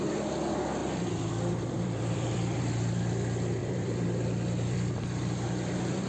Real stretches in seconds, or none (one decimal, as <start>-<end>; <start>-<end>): 0.0-0.8; 2.6-3.6